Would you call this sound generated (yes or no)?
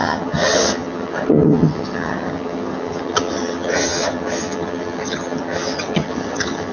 yes